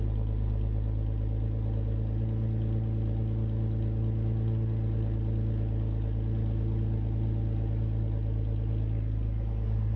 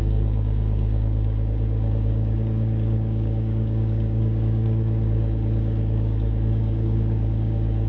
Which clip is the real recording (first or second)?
first